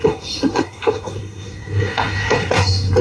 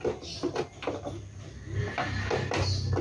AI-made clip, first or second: first